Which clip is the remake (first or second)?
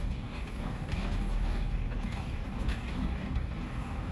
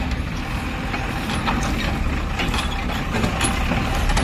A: first